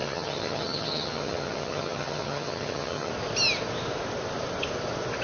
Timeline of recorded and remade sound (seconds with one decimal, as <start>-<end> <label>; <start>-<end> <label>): 0.0-3.1 remade; 3.1-5.2 recorded